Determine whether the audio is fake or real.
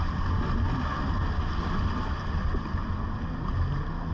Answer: real